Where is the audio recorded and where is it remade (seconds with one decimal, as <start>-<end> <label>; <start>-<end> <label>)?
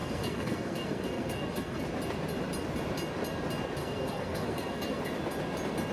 0.0-1.8 remade; 1.8-3.8 recorded; 3.8-5.0 remade; 5.0-5.9 recorded